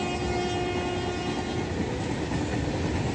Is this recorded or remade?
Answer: recorded